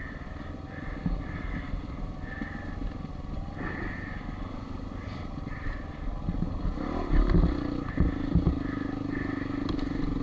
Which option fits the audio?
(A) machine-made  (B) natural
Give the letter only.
B